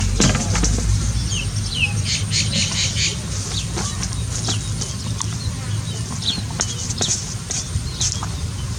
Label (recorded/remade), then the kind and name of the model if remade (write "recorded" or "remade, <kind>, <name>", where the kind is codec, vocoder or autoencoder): recorded